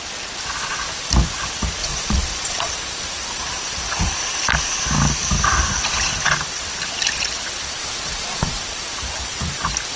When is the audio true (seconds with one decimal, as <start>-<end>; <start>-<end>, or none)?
0.0-1.8; 2.7-7.8; 8.6-10.0